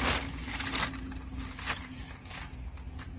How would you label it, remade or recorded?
recorded